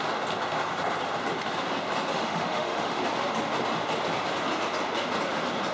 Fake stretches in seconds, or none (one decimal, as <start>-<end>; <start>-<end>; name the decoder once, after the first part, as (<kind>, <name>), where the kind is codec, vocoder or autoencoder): 2.1-3.0 (autoencoder, DAC-VAE)